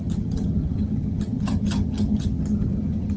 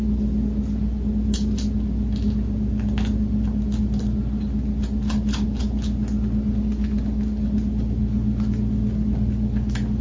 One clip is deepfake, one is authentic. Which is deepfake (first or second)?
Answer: first